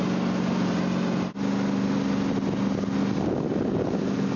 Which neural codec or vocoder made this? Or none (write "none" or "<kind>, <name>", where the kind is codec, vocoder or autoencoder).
none